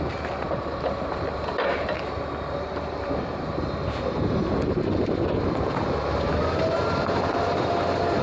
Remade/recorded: remade